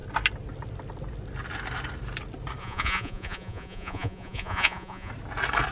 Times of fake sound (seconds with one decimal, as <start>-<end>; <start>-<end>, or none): 2.6-5.1

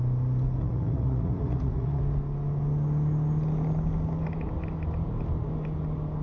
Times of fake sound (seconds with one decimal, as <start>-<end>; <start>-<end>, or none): 0.6-2.0